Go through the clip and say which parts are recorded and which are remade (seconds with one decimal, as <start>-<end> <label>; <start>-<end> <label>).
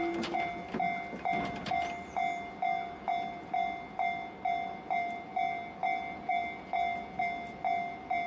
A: 0.0-8.3 recorded